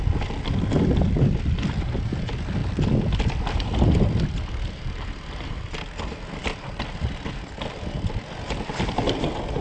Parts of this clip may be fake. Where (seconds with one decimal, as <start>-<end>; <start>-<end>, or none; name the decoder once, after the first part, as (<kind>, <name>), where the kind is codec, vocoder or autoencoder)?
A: 2.6-4.4 (vocoder, BigVGAN v2); 6.4-7.0